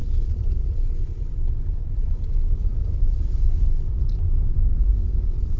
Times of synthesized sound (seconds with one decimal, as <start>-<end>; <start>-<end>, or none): 2.7-4.9